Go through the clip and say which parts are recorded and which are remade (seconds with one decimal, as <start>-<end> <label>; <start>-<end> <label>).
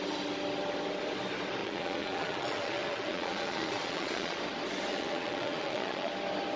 0.0-1.6 recorded; 1.6-4.4 remade; 4.4-4.9 recorded; 4.9-6.1 remade; 6.1-6.6 recorded